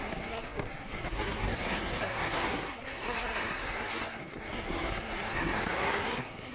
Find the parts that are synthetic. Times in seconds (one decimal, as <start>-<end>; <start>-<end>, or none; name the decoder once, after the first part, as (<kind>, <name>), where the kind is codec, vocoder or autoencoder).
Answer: 0.0-6.5 (codec, SNAC)